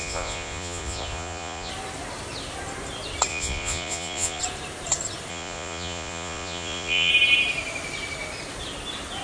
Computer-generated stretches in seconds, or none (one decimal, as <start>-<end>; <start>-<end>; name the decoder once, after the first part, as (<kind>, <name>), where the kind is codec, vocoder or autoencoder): 0.0-1.7 (vocoder, Vocos); 3.3-4.4; 5.3-7.1